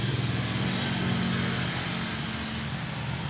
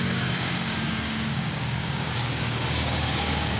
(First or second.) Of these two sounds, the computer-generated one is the second